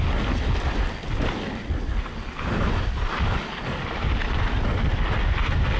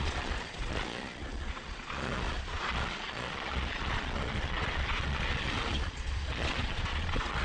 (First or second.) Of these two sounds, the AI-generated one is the second